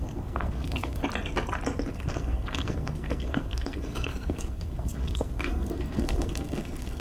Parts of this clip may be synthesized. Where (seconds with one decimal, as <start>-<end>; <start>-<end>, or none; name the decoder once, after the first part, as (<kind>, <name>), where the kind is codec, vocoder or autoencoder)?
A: 0.0-1.0 (codec, SNAC); 1.9-7.0